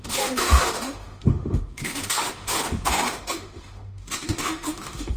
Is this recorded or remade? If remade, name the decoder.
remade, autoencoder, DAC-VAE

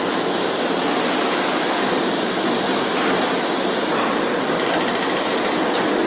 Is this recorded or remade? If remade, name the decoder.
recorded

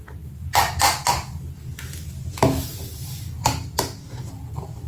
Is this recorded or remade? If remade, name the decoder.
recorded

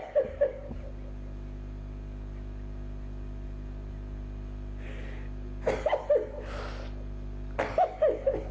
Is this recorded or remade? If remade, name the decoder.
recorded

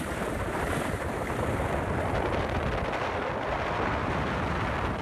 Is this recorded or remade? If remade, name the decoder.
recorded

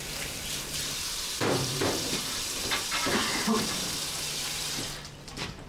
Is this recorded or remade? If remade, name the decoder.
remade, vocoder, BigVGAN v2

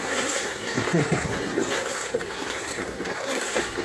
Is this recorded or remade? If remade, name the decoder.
remade, codec, SNAC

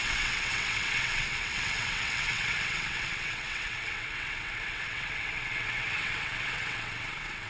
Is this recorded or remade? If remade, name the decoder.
remade, vocoder, WaveNeXt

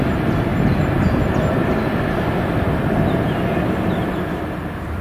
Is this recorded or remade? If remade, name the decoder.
remade, vocoder, BigVGAN v2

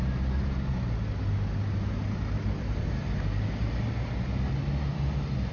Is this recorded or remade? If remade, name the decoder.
recorded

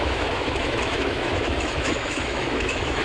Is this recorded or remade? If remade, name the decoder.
remade, autoencoder, DAC-VAE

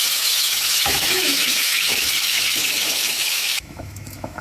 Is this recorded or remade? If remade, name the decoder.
remade, autoencoder, DAC-VAE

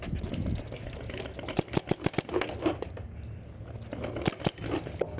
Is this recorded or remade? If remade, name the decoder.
recorded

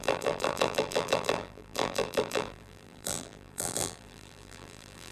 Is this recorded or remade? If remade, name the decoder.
remade, vocoder, BigVGAN v2